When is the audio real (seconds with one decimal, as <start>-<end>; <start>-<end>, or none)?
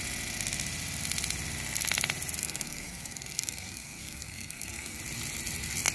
0.0-2.4; 5.0-5.9